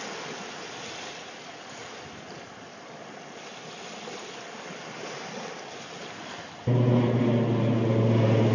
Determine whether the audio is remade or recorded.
recorded